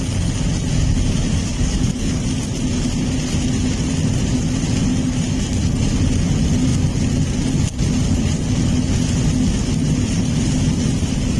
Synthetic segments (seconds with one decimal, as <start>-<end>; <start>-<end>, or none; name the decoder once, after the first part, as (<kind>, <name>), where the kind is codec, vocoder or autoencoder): 1.4-2.2 (codec, DAC)